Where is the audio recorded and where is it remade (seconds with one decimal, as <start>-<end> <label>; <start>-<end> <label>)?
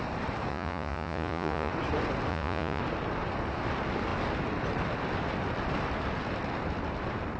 0.0-0.5 recorded; 0.5-1.7 remade; 1.7-2.3 recorded; 2.3-2.8 remade; 2.8-7.4 recorded